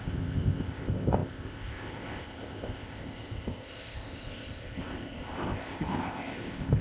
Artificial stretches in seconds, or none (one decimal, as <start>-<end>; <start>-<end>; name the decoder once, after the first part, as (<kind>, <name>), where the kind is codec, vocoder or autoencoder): 0.0-6.8 (codec, ZipCodec)